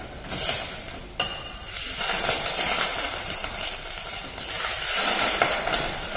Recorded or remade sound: recorded